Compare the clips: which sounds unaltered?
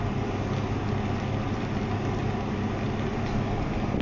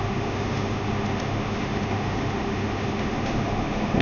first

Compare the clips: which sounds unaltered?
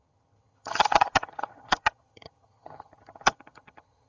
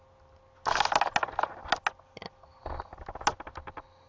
second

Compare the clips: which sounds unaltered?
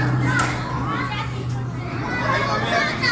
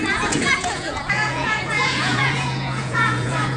first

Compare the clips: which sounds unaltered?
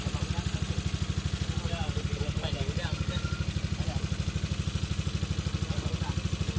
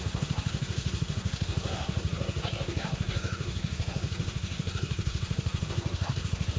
first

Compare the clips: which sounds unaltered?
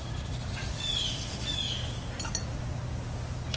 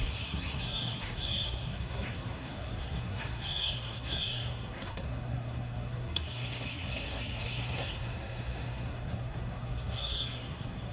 first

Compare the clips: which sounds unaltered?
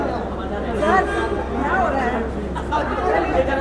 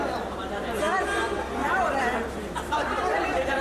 first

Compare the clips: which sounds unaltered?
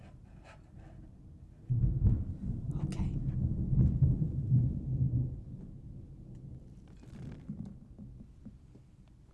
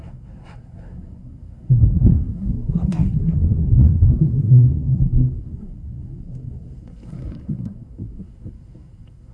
first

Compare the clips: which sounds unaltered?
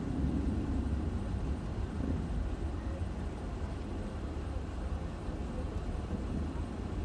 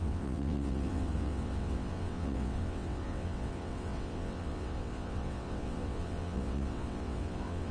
first